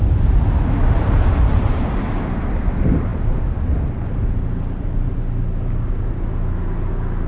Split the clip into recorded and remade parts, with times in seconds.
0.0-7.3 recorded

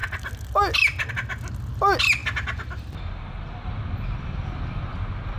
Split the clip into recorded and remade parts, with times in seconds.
0.0-5.4 recorded